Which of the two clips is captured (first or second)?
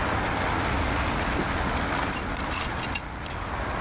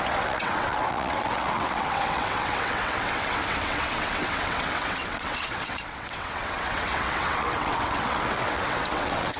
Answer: first